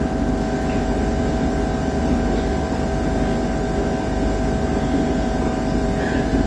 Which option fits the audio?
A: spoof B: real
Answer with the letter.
B